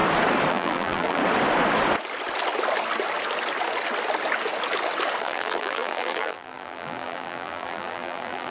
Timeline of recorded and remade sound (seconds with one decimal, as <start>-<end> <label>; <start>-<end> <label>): 0.0-0.5 recorded; 0.5-1.2 remade; 1.2-5.2 recorded; 5.2-8.5 remade